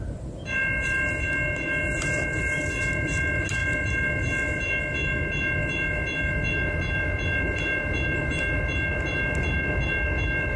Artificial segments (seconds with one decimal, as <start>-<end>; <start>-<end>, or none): none